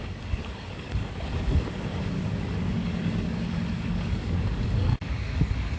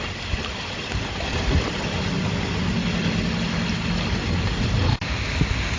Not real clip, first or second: first